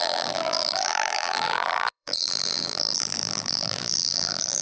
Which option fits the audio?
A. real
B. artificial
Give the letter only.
B